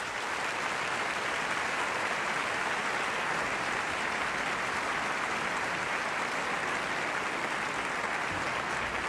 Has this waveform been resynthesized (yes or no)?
no